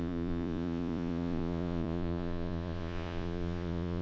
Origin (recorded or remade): remade